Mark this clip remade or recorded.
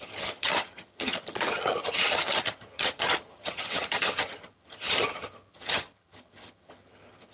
remade